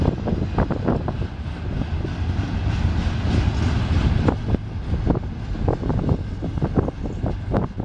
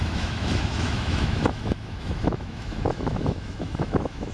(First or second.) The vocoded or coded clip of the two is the second